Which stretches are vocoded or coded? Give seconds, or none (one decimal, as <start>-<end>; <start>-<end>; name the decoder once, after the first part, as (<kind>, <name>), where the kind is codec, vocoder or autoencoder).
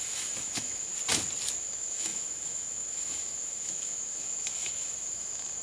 0.0-0.9 (autoencoder, DAC-VAE); 1.6-5.6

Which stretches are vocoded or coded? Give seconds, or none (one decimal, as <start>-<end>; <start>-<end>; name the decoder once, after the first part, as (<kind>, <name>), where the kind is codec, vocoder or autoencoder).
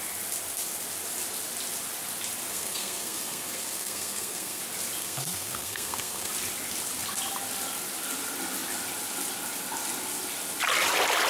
2.5-4.6 (codec, SNAC); 5.0-6.3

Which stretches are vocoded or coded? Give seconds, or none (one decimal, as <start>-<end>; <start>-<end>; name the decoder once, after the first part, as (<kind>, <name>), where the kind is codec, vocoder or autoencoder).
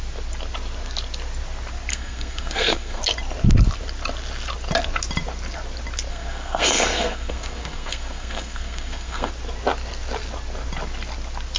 1.9-3.0 (codec, SNAC); 6.1-9.3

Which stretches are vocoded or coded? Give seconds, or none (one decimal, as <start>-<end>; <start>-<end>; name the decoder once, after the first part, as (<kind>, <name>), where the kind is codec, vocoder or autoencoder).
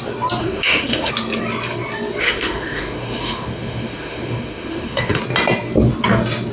0.4-1.1 (autoencoder, DAC-VAE); 2.2-5.2